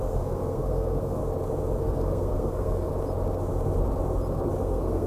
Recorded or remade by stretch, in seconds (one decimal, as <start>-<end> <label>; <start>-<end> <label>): 0.0-1.2 remade; 1.2-1.8 recorded; 1.8-2.9 remade; 2.9-4.6 recorded; 4.6-5.1 remade

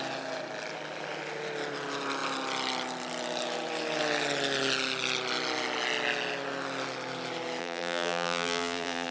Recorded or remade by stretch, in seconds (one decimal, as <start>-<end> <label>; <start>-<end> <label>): 0.0-7.6 recorded; 7.6-9.1 remade

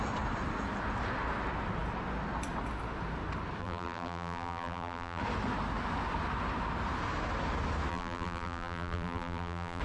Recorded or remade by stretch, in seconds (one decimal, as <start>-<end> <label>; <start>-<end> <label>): 0.0-3.6 recorded; 3.6-5.2 remade; 5.2-7.9 recorded; 7.9-9.8 remade

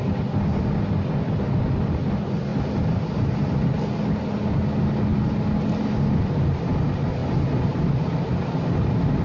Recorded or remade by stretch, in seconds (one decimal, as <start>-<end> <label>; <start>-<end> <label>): 0.0-2.5 recorded; 2.5-3.8 remade; 3.8-9.2 recorded